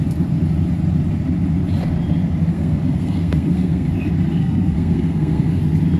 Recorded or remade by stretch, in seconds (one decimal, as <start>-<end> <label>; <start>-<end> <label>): 0.0-2.5 recorded; 2.5-3.9 remade; 3.9-4.4 recorded; 4.4-5.6 remade; 5.6-6.0 recorded